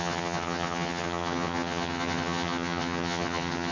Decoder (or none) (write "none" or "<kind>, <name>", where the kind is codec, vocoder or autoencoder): vocoder, HiFi-GAN